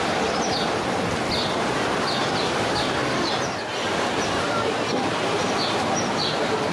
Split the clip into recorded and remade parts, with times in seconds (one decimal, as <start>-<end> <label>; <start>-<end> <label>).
0.0-3.0 remade; 3.0-5.4 recorded; 5.4-6.7 remade